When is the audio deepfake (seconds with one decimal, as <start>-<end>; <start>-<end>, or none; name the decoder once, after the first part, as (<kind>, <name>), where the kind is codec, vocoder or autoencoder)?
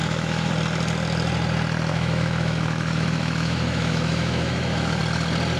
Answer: 0.0-0.5 (autoencoder, DAC-VAE); 1.9-5.0